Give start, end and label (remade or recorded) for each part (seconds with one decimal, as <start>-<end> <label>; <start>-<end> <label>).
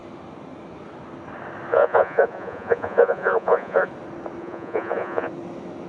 0.0-1.7 recorded; 1.7-3.9 remade; 3.9-4.4 recorded; 4.4-5.3 remade; 5.3-5.9 recorded